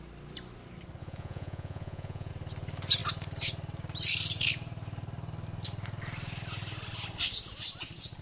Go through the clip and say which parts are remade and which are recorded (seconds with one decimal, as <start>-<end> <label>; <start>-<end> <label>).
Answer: 0.0-1.0 recorded; 1.0-2.3 remade; 2.3-8.2 recorded